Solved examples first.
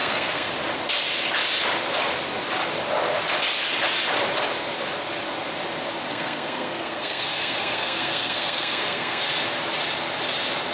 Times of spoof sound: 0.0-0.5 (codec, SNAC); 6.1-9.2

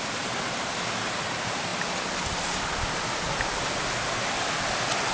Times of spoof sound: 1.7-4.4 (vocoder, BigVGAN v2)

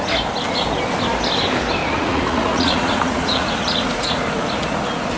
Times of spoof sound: 1.8-4.2 (vocoder, Vocos)